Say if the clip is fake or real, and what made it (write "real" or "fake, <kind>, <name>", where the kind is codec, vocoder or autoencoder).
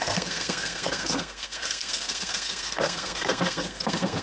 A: fake, codec, SNAC